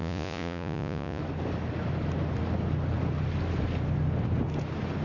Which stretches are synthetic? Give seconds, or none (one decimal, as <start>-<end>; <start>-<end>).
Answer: 0.0-1.2